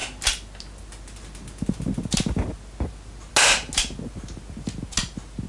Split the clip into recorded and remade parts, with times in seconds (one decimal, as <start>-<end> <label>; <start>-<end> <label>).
0.0-5.5 recorded